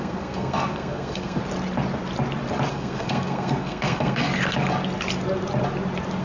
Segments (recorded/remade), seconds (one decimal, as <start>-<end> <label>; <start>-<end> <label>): 0.0-1.4 remade; 1.4-2.7 recorded; 2.7-4.3 remade; 4.3-6.2 recorded